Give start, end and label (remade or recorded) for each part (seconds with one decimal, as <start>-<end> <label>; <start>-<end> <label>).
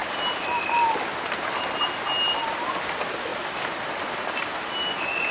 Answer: 0.0-3.3 recorded; 3.3-4.1 remade; 4.1-5.3 recorded